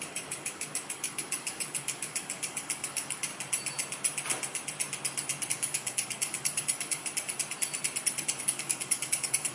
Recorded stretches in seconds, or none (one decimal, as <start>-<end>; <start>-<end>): 3.3-5.5; 7.0-8.4

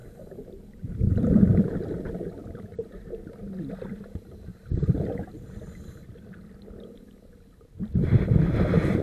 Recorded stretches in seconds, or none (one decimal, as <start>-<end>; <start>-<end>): 4.5-8.1

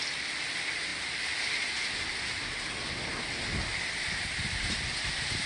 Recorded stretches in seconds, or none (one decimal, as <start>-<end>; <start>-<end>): 0.0-3.7

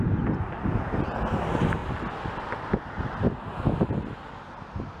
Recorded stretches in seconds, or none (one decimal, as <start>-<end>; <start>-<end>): 0.0-5.0

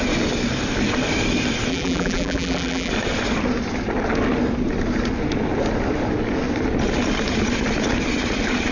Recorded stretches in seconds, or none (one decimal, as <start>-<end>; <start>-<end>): 0.0-1.7; 2.9-8.7

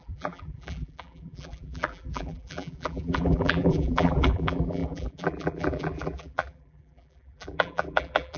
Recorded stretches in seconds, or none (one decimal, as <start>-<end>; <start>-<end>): none

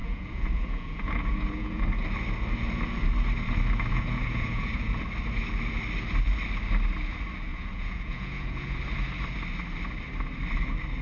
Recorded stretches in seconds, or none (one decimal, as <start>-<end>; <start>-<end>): 1.8-3.9; 5.0-7.5; 8.8-11.0